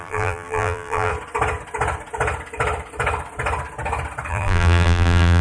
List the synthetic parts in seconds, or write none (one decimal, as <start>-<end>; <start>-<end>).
0.0-1.1; 4.3-5.4